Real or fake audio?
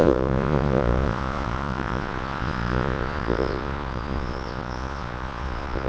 fake